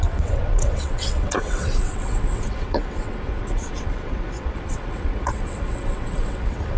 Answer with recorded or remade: remade